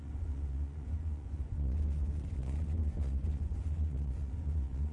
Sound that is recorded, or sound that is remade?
remade